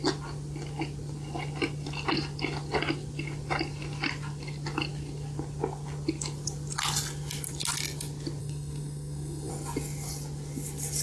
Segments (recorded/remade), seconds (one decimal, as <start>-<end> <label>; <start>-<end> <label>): 0.0-8.4 recorded; 8.4-9.5 remade; 9.5-11.0 recorded